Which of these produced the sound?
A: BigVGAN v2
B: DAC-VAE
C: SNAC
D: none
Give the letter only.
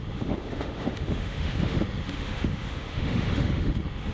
B